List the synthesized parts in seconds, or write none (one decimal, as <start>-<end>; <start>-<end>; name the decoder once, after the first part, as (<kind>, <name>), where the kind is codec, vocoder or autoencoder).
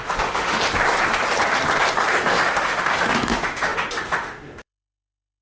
0.0-0.6 (autoencoder, DAC-VAE); 2.2-5.4